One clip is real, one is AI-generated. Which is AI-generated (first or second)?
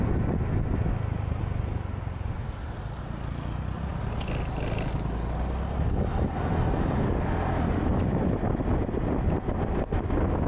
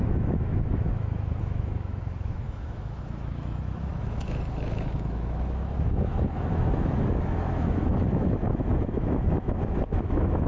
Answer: second